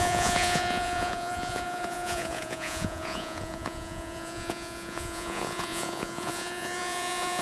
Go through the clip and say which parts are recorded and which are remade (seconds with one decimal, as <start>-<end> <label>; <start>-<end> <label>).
0.0-7.4 remade